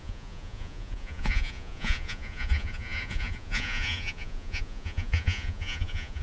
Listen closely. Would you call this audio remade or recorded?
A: remade